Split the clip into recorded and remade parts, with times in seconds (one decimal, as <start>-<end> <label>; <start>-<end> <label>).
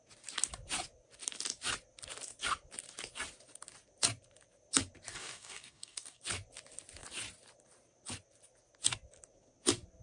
0.0-5.1 recorded; 5.1-6.2 remade; 6.2-10.0 recorded